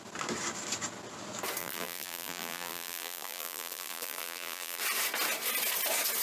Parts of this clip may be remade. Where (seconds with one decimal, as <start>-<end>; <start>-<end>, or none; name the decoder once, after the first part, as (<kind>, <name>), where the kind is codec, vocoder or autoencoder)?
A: 1.6-4.8 (vocoder, BigVGAN v2)